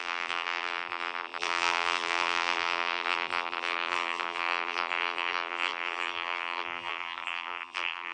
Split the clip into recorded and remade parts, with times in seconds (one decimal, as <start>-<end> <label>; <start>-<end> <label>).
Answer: 0.0-8.1 remade